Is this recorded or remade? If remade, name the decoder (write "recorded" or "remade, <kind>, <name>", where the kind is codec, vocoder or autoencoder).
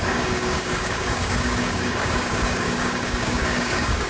remade, codec, DAC